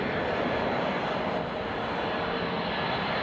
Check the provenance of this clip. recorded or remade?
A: recorded